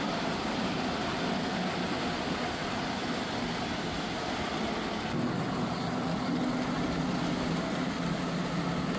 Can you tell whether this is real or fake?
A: real